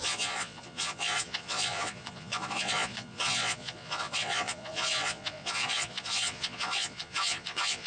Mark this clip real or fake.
fake